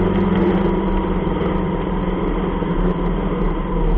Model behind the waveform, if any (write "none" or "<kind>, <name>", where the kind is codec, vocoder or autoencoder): none